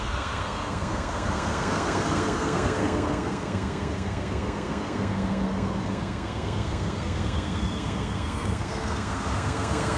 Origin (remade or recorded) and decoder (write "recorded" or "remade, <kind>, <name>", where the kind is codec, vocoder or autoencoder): remade, codec, SNAC